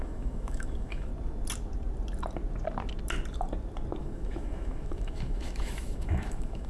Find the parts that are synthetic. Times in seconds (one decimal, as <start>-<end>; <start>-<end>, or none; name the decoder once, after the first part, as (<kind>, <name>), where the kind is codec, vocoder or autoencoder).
0.0-1.1 (autoencoder, DAC-VAE); 4.0-6.7